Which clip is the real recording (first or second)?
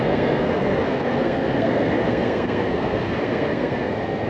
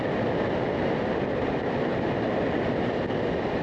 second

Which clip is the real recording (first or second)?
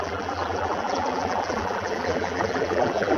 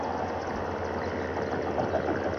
second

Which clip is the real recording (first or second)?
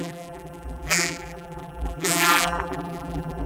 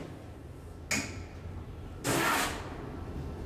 second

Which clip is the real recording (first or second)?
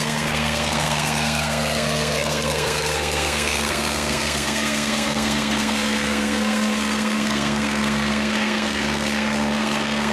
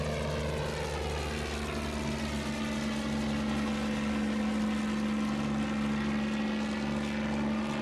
second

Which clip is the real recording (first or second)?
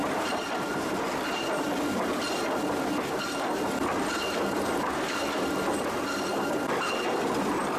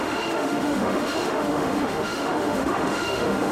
first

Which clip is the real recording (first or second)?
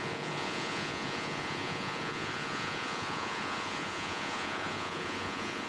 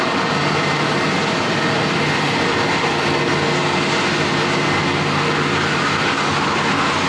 second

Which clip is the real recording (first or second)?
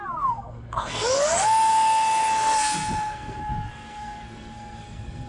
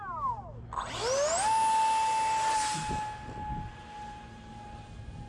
second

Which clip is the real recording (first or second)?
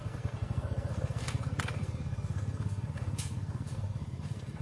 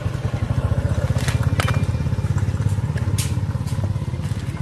second